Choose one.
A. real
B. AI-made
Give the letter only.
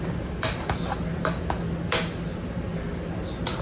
A